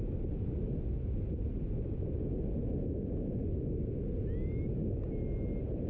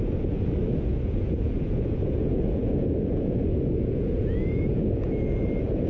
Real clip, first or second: first